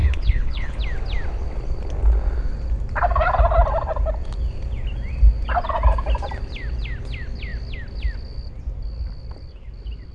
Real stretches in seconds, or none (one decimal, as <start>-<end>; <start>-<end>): 0.8-10.1